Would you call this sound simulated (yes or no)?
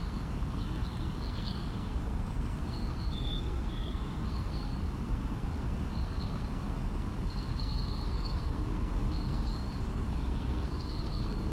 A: yes